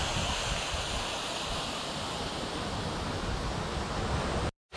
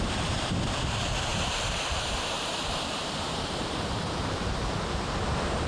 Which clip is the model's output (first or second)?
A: second